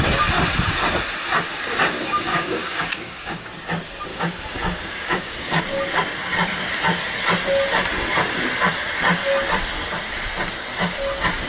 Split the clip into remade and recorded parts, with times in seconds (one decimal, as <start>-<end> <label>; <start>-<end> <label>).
0.0-2.3 recorded; 2.3-3.5 remade; 3.5-4.1 recorded; 4.1-5.6 remade; 5.6-11.5 recorded